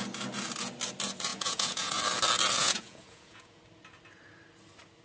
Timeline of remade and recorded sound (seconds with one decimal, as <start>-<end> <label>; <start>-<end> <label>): 0.0-1.3 recorded; 1.3-2.0 remade; 2.0-2.6 recorded; 2.6-3.6 remade; 3.6-5.0 recorded